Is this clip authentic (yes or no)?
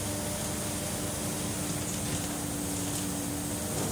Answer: yes